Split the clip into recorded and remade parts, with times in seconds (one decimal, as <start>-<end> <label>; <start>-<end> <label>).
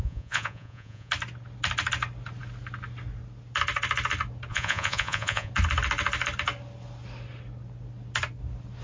0.0-1.1 remade; 1.1-4.5 recorded; 4.5-5.5 remade; 5.5-8.8 recorded